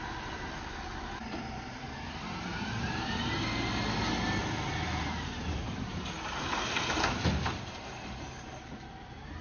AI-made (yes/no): yes